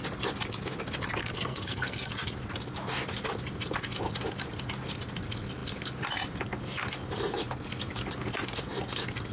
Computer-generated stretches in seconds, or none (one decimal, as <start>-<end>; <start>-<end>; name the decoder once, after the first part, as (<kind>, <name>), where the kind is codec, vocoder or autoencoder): 1.2-2.1 (codec, SNAC)